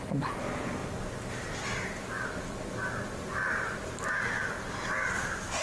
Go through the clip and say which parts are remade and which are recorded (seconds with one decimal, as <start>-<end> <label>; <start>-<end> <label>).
0.0-5.6 recorded